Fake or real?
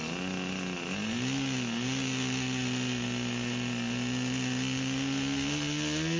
real